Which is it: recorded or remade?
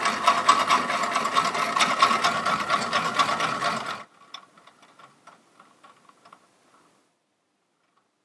recorded